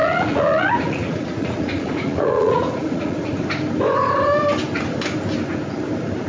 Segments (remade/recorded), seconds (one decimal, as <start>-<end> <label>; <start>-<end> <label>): 0.0-3.3 remade; 3.3-6.3 recorded